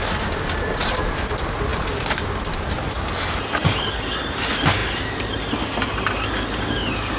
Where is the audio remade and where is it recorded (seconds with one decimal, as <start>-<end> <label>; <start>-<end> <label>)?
0.0-7.2 recorded